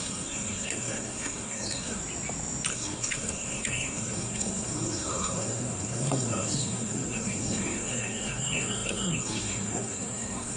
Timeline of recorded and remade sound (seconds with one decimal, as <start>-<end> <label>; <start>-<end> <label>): 0.0-2.0 remade; 2.0-2.7 recorded; 2.7-10.6 remade